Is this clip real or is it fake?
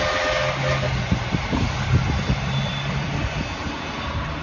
real